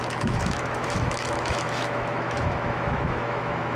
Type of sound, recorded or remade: remade